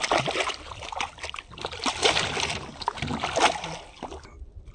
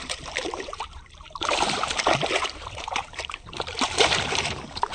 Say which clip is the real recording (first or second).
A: first